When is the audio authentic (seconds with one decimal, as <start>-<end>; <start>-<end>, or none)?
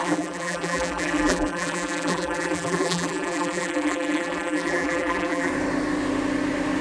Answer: 5.5-6.8